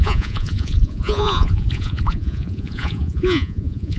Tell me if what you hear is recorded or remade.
remade